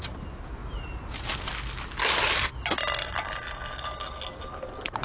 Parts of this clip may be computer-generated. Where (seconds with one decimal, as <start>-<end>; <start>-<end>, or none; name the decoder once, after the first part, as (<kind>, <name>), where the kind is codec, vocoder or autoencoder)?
none